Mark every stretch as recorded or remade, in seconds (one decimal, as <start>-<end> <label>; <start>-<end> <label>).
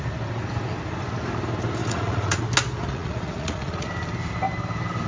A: 0.0-1.8 recorded; 1.8-2.4 remade; 2.4-2.9 recorded; 2.9-3.9 remade; 3.9-5.1 recorded